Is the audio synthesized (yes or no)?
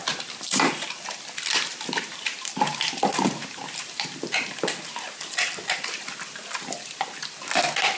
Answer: no